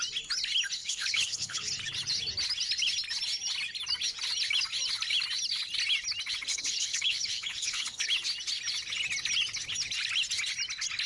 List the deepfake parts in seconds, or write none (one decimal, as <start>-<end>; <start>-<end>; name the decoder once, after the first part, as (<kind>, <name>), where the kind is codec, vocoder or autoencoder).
0.8-1.7 (codec, HILCodec); 6.5-8.1